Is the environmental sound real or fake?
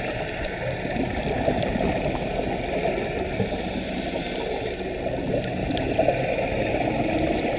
real